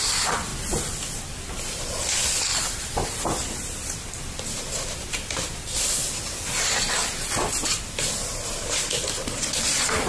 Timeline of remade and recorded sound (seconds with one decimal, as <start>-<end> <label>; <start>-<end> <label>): 0.0-6.0 remade; 6.0-7.9 recorded; 7.9-10.1 remade